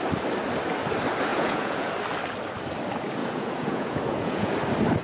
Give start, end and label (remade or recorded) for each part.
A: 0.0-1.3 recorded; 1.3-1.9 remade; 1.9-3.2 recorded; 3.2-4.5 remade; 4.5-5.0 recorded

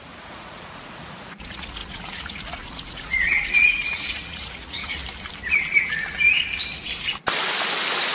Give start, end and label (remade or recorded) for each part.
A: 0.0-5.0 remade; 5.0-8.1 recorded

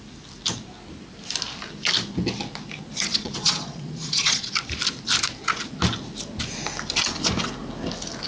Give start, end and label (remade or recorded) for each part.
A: 0.0-3.1 recorded; 3.1-4.5 remade; 4.5-8.3 recorded

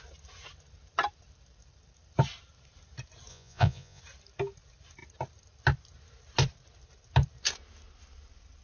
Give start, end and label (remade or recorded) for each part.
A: 0.0-3.3 recorded; 3.3-4.0 remade; 4.0-8.6 recorded

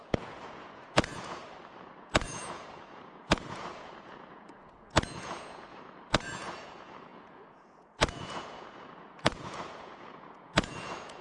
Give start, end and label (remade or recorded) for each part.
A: 0.0-1.4 remade; 1.4-2.0 recorded; 2.0-11.2 remade

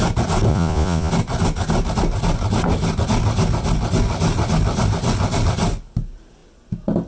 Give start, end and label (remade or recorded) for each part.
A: 0.0-0.5 recorded; 0.5-1.1 remade; 1.1-7.1 recorded